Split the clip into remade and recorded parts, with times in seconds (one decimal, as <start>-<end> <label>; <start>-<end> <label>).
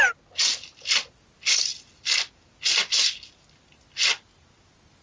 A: 0.0-5.0 recorded